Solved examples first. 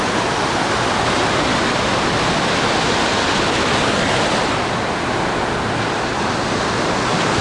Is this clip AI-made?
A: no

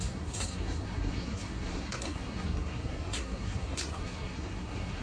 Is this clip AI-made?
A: yes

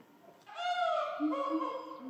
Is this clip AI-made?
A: no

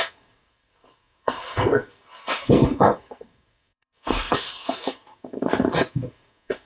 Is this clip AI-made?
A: yes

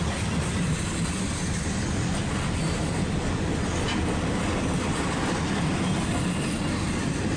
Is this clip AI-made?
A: no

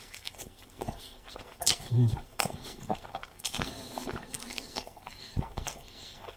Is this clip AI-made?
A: yes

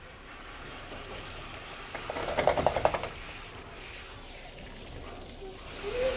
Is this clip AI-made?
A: no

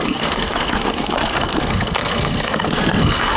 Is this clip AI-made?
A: yes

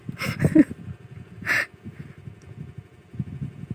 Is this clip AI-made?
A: no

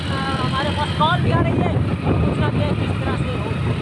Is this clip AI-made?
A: no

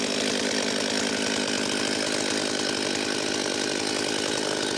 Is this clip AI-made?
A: no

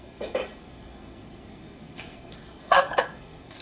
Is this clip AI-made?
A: yes